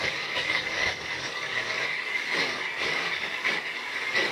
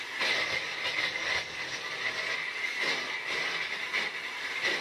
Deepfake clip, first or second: first